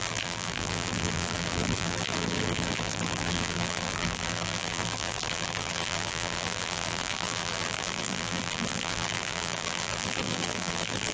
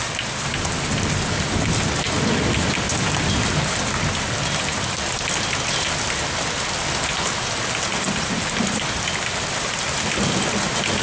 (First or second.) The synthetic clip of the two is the first